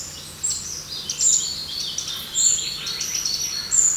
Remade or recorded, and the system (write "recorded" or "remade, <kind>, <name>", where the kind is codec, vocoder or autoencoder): recorded